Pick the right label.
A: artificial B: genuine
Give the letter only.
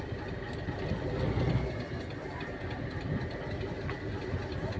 B